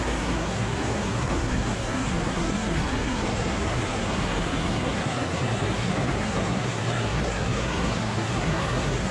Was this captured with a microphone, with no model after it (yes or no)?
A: no